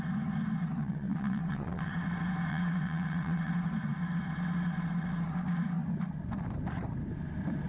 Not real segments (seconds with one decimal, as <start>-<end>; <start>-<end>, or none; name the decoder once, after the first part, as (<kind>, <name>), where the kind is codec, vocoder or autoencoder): 0.8-1.9 (vocoder, WaveNeXt); 2.5-3.5